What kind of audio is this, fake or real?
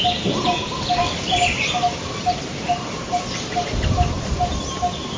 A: fake